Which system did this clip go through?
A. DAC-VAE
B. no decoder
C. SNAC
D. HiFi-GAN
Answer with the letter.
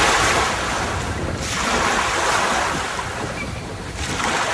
B